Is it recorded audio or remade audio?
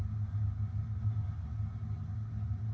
recorded